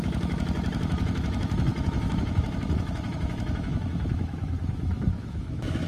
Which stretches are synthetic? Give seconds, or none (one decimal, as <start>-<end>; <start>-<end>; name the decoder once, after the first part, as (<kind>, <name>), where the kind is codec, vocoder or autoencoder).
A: 0.0-5.9 (autoencoder, DAC-VAE)